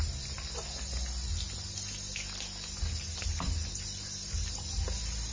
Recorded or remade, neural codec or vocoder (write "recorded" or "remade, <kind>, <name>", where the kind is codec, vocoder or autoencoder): recorded